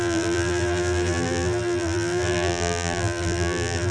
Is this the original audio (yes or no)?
no